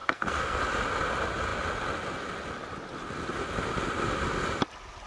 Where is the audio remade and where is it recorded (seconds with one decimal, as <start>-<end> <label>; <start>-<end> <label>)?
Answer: 0.0-0.6 remade; 0.6-5.1 recorded